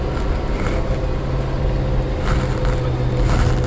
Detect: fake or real real